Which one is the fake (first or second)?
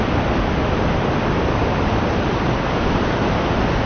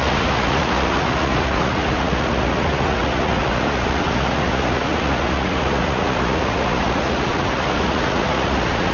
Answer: second